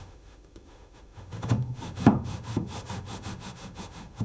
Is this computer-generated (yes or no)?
yes